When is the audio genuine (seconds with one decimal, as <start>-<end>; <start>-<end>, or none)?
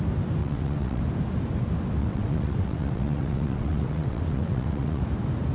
0.0-0.4; 1.0-2.0; 5.0-5.5